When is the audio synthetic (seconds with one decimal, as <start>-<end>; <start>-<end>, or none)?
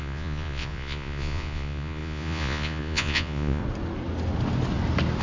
0.0-3.6